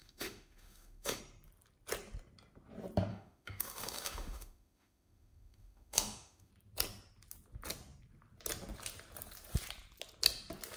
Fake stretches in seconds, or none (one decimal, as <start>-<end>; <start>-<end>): 0.0-1.2; 3.1-6.5